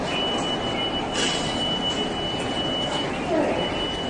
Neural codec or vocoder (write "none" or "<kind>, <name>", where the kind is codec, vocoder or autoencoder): none